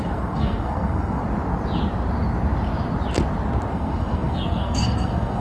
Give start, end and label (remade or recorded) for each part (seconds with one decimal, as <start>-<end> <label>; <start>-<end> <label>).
0.0-1.2 remade; 1.2-3.7 recorded; 3.7-5.4 remade